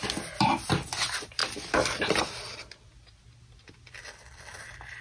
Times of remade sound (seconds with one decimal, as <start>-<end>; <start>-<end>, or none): none